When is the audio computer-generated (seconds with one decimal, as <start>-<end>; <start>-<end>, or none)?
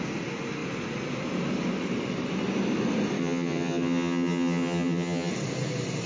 3.2-5.3